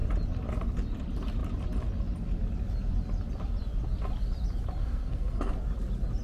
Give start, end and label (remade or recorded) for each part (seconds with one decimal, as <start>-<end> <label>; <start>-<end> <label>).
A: 0.0-4.8 recorded; 4.8-5.5 remade; 5.5-6.2 recorded